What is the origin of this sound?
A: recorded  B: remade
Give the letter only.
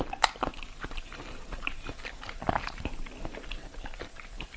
A